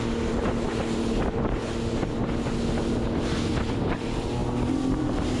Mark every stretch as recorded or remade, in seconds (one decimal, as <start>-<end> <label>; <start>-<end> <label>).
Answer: 0.0-5.4 recorded